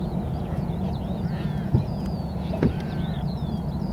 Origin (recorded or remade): remade